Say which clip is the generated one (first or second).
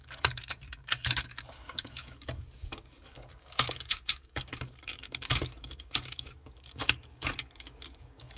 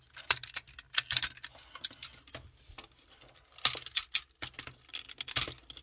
first